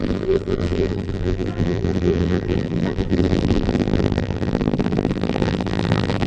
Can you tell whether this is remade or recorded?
remade